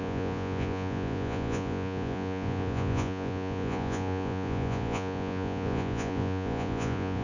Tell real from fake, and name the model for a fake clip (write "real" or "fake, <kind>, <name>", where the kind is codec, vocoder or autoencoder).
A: fake, vocoder, Vocos